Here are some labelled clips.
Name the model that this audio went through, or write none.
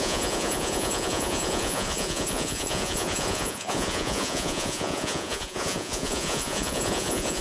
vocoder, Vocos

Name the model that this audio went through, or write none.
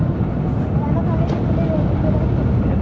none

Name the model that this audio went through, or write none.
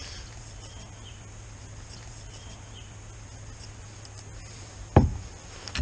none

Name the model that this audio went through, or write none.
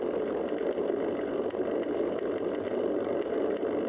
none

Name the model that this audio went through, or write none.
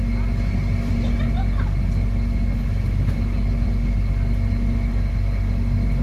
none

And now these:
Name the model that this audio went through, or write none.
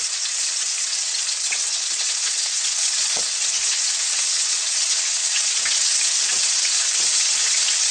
vocoder, WaveNeXt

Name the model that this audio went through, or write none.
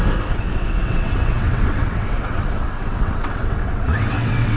vocoder, WaveNeXt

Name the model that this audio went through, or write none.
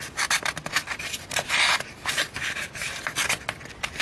vocoder, BigVGAN v2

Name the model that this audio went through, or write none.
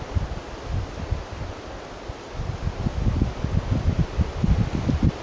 none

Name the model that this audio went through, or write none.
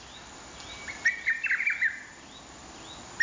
none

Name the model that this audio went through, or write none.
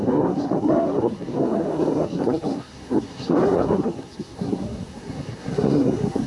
codec, SNAC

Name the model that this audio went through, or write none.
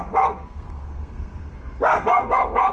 codec, SNAC